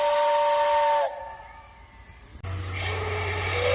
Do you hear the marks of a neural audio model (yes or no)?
no